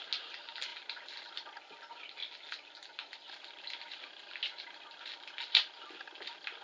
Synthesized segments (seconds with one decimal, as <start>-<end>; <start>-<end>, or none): none